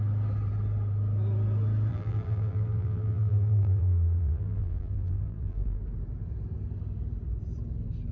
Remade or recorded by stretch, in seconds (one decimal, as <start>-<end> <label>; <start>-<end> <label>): 0.0-1.9 recorded; 1.9-5.8 remade; 5.8-8.1 recorded

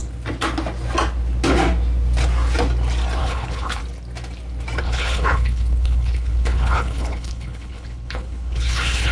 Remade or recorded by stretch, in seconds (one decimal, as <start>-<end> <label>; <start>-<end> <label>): 0.0-3.2 recorded; 3.2-3.8 remade; 3.8-4.8 recorded; 4.8-9.1 remade

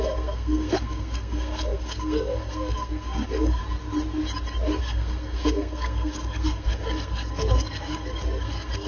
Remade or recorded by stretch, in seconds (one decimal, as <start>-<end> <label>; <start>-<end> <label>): 0.0-3.6 remade; 3.6-4.8 recorded; 4.8-8.9 remade

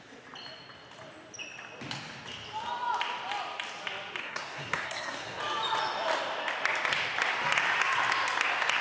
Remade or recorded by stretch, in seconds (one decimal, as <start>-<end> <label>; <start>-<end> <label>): 0.0-4.2 recorded; 4.2-5.4 remade; 5.4-8.8 recorded

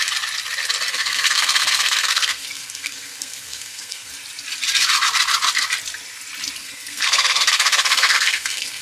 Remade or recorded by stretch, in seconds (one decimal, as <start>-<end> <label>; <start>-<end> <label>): 0.0-0.9 recorded; 0.9-4.1 remade; 4.1-6.6 recorded; 6.6-8.8 remade

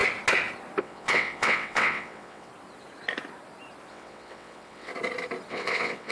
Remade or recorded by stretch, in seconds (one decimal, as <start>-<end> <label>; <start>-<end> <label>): 0.0-0.8 recorded; 0.8-2.5 remade; 2.5-3.9 recorded; 3.9-4.9 remade; 4.9-5.5 recorded; 5.5-6.1 remade

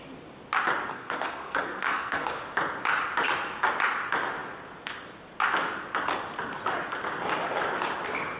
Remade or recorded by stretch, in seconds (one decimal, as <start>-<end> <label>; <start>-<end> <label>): 0.0-0.9 recorded; 0.9-2.4 remade; 2.4-8.4 recorded

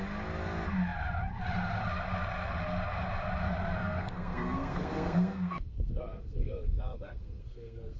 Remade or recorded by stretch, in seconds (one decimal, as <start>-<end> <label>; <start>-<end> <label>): 0.0-3.8 recorded; 3.8-8.0 remade